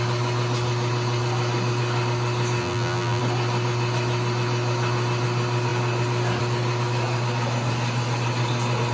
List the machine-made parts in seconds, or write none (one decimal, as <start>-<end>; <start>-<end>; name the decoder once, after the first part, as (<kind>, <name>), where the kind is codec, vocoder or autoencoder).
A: 2.6-3.2 (vocoder, BigVGAN v2)